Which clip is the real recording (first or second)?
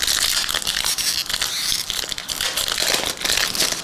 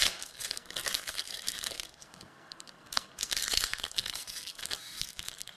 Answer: first